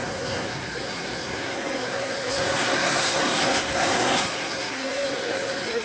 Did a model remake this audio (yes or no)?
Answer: yes